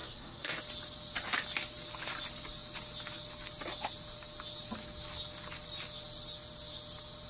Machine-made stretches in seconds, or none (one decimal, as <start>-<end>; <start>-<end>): 0.0-0.6